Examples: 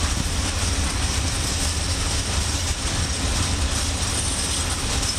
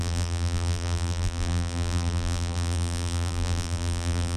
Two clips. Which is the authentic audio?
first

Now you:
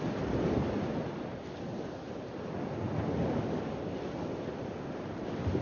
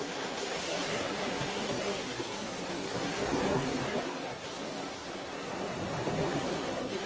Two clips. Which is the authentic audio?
first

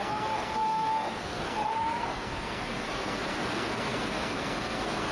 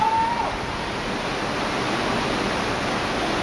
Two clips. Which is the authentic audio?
second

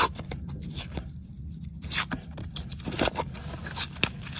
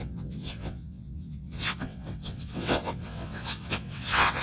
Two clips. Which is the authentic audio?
first